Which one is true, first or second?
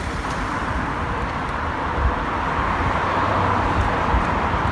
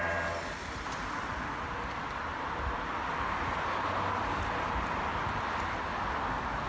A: second